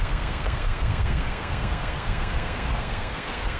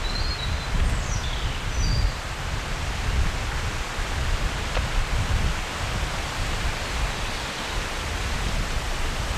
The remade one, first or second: first